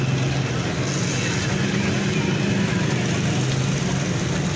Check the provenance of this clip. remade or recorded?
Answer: recorded